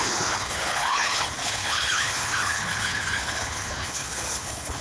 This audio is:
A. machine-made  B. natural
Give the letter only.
A